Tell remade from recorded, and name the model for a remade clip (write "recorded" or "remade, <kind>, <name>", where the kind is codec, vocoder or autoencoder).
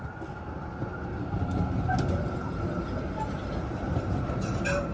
recorded